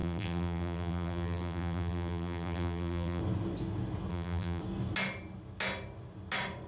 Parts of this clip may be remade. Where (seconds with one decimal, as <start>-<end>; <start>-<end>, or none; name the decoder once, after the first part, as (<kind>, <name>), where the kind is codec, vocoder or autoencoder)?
0.0-3.2 (vocoder, BigVGAN v2); 4.1-4.6